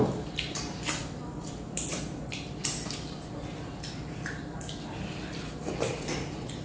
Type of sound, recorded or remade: remade